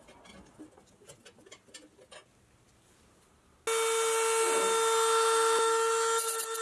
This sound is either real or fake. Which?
real